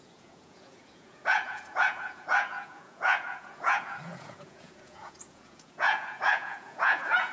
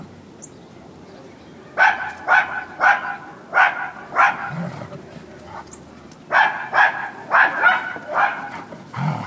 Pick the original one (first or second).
second